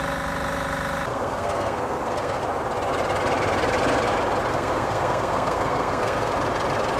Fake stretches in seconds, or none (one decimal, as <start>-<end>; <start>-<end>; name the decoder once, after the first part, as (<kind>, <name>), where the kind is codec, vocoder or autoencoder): 1.1-2.4 (codec, SNAC); 4.5-6.3